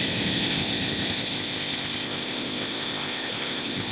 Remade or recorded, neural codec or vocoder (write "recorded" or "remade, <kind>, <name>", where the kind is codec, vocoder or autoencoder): remade, codec, ZipCodec